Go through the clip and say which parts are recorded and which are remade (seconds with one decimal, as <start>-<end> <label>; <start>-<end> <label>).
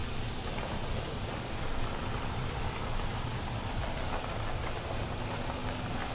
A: 0.0-5.6 remade; 5.6-6.1 recorded